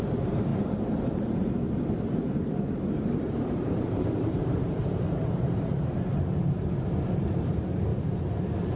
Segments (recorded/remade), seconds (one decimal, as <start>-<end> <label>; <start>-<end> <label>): 0.0-7.9 remade; 7.9-8.8 recorded

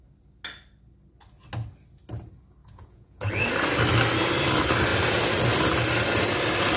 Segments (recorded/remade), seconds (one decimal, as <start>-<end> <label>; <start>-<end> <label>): 0.0-2.6 recorded; 2.6-3.3 remade; 3.3-6.8 recorded

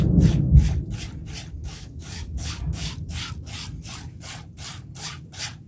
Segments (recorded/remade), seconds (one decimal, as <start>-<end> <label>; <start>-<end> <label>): 0.0-1.6 recorded; 1.6-2.9 remade; 2.9-5.7 recorded

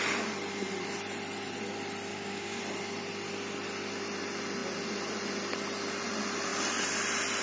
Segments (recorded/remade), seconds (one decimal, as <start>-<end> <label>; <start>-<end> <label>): 0.0-2.1 recorded; 2.1-2.6 remade; 2.6-7.4 recorded

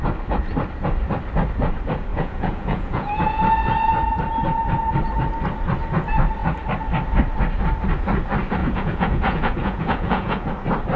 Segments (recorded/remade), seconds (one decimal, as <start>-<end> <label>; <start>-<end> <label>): 0.0-2.1 recorded; 2.1-3.4 remade; 3.4-8.6 recorded; 8.6-10.5 remade; 10.5-11.0 recorded

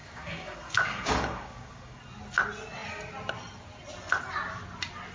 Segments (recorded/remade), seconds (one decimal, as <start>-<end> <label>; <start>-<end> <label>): 0.0-2.0 remade; 2.0-5.1 recorded

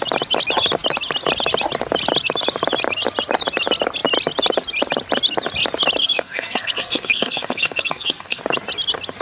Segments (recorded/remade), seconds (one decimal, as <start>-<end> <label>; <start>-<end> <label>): 0.0-6.0 recorded; 6.0-8.4 remade; 8.4-9.2 recorded

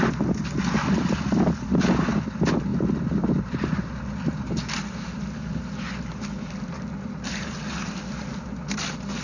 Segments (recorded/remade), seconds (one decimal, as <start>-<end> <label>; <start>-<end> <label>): 0.0-9.2 recorded